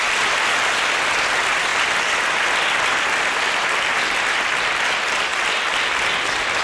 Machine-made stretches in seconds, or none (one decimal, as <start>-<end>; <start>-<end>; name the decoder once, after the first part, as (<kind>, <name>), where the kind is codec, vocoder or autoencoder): none

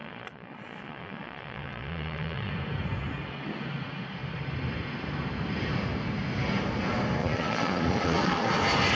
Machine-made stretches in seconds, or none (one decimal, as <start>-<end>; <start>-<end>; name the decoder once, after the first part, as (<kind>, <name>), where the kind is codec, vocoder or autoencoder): 0.0-2.5 (vocoder, Vocos); 7.2-8.5

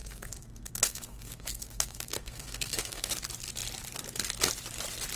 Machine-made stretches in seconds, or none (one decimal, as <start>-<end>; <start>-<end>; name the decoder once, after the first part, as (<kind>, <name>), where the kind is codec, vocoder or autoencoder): 0.0-3.1 (codec, SNAC)

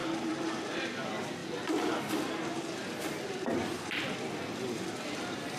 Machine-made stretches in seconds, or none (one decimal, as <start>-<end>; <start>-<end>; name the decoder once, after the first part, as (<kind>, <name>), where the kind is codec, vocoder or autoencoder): 0.0-0.9 (vocoder, BigVGAN v2); 2.5-4.6

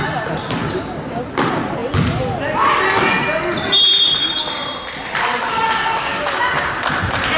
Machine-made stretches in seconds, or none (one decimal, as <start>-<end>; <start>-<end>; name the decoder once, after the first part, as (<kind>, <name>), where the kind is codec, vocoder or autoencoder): 0.6-1.2 (codec, DAC); 5.5-6.8

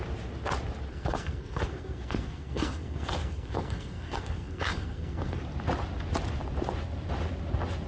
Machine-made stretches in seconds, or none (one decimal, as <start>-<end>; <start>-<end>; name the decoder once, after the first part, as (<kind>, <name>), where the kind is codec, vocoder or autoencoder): 0.9-5.4 (codec, SNAC)

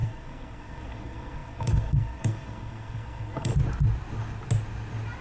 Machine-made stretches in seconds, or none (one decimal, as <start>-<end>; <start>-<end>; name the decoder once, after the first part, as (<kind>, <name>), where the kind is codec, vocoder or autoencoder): 0.0-3.5 (codec, SNAC)